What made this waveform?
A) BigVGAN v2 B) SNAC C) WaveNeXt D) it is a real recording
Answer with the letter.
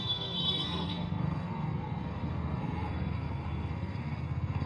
B